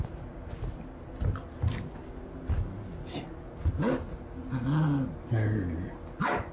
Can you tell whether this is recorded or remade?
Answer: recorded